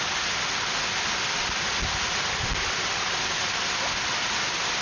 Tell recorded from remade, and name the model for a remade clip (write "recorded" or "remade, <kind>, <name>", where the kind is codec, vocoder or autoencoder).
recorded